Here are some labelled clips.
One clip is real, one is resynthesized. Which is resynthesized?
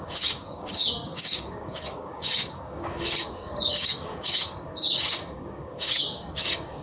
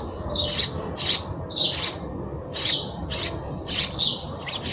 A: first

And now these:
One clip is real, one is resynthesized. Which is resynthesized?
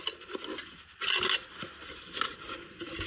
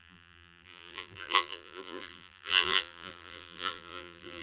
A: second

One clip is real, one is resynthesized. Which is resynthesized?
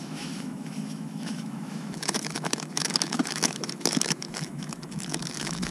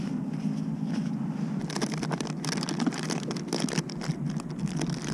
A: first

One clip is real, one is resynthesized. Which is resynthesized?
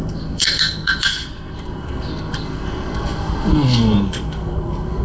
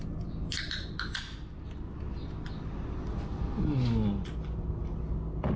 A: first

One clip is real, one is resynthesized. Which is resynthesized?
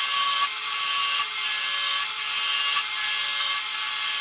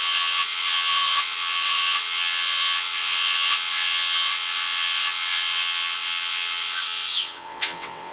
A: second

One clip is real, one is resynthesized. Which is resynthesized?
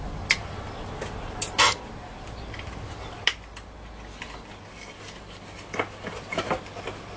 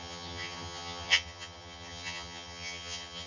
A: second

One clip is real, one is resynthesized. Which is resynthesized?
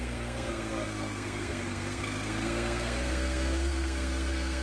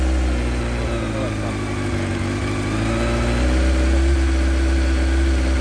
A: first